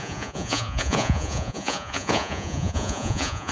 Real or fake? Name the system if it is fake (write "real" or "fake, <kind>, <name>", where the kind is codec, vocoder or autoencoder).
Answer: fake, vocoder, Vocos